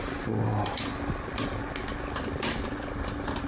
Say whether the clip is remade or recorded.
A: recorded